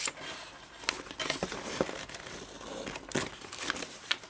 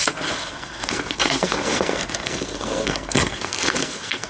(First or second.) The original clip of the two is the first